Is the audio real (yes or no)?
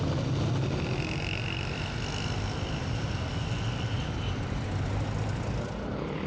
yes